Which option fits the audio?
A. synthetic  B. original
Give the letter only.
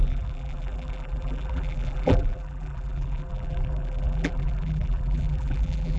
A